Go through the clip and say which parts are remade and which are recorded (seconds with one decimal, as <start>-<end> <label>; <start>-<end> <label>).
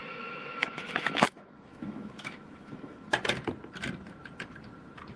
0.0-3.1 remade; 3.1-5.2 recorded